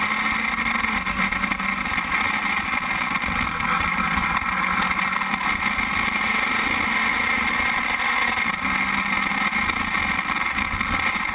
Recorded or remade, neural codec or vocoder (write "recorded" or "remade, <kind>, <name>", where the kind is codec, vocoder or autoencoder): recorded